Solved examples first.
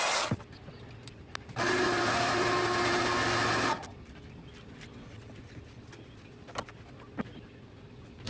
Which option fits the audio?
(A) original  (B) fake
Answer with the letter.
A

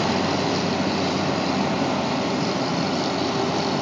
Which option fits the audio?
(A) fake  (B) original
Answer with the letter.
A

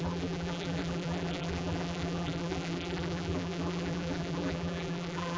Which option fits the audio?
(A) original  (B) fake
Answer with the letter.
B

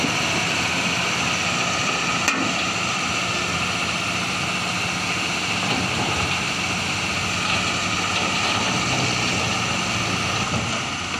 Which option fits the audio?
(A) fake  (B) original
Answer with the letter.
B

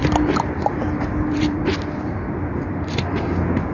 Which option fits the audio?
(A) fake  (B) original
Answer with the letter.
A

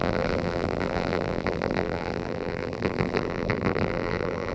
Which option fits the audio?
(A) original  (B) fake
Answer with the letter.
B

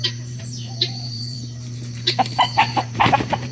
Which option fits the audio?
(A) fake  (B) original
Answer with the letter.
A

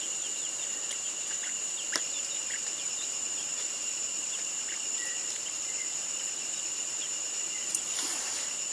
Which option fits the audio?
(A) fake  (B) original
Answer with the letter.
A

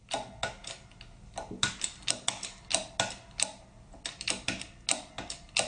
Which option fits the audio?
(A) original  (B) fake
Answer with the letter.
A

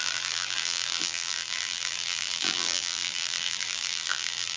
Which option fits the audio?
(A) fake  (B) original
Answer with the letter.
A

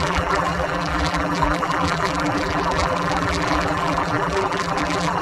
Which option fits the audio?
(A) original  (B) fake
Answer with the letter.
B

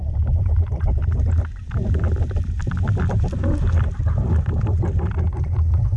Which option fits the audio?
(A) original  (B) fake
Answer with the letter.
B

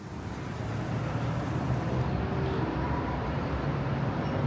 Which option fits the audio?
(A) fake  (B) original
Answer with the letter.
B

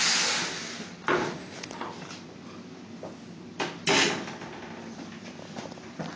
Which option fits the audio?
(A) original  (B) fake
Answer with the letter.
A